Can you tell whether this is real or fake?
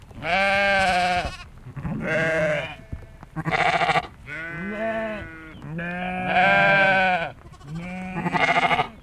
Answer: real